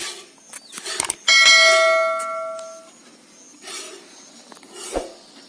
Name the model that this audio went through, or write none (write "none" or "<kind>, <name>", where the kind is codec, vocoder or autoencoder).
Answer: none